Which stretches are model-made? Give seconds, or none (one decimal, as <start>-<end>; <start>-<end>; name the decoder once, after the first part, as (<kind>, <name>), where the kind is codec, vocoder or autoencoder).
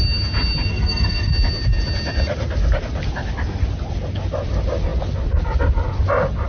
0.7-1.3 (codec, SNAC)